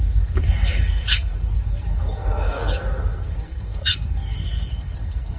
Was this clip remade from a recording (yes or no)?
yes